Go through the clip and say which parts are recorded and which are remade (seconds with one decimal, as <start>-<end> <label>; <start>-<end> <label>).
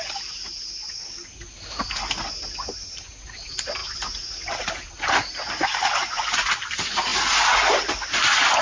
0.0-8.6 recorded